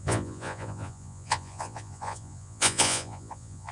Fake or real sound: fake